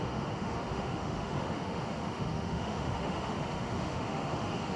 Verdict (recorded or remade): remade